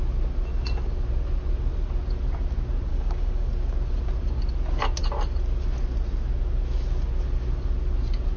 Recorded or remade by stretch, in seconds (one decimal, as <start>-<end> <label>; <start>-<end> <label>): 0.0-2.9 recorded; 2.9-3.5 remade; 3.5-8.4 recorded